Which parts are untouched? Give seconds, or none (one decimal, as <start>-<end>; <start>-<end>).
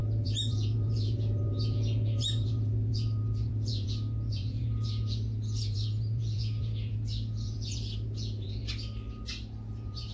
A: 8.6-9.7